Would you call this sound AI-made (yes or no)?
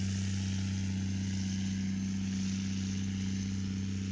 no